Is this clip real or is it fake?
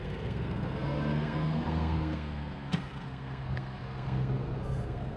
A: fake